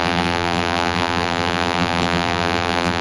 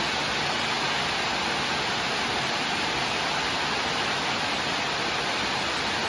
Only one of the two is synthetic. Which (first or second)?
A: first